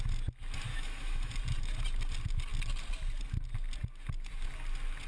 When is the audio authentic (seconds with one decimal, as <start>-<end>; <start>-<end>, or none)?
0.0-0.7; 1.3-5.1